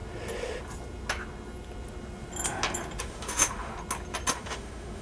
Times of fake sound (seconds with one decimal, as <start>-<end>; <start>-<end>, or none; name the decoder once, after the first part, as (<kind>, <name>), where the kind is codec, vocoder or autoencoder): 3.0-3.7 (autoencoder, DAC-VAE); 4.3-5.0